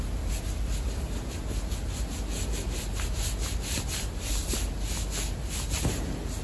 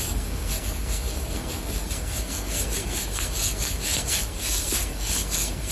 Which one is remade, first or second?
second